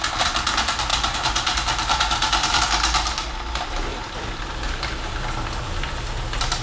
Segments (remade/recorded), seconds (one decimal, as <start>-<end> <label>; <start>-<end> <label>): 0.0-0.9 recorded; 0.9-2.6 remade; 2.6-3.9 recorded; 3.9-4.8 remade; 4.8-6.6 recorded